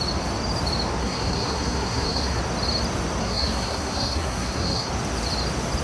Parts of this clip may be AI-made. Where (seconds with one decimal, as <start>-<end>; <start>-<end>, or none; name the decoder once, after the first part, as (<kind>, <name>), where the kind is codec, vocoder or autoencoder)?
1.0-2.4 (codec, SNAC); 3.2-4.9